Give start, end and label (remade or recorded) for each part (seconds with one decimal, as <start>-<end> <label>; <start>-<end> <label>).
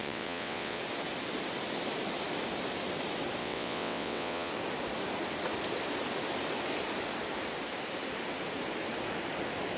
0.0-0.8 remade; 0.8-3.4 recorded; 3.4-4.5 remade; 4.5-9.8 recorded